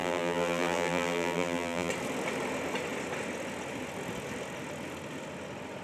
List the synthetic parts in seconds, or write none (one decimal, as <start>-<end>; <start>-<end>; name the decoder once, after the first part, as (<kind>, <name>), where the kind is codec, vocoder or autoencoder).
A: 0.0-1.9 (vocoder, BigVGAN v2)